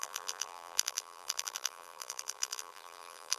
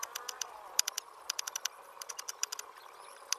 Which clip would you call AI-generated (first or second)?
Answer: first